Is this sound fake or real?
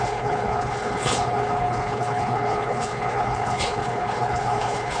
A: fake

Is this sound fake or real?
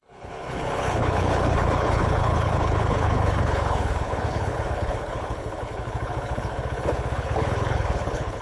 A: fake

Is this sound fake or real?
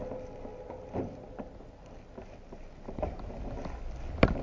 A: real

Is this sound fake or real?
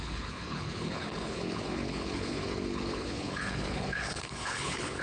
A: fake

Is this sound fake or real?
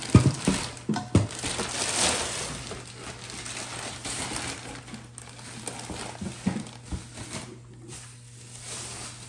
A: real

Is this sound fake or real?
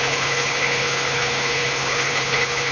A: fake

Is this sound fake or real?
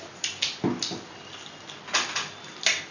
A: real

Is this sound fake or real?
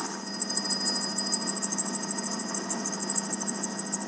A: real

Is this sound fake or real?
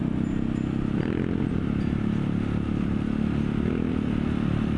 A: real